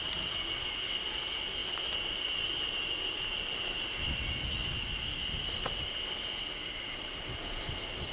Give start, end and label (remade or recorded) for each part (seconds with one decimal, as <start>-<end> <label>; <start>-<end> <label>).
0.0-8.1 recorded